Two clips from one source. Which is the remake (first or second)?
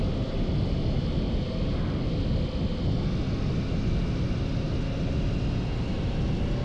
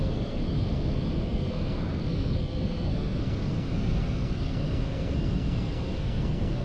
second